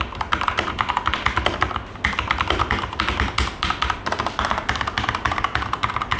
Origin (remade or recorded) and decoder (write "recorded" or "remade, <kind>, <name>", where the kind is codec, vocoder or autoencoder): recorded